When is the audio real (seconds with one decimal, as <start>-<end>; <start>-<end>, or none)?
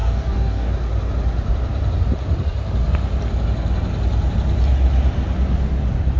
0.7-6.2